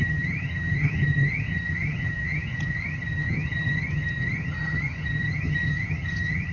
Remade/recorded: remade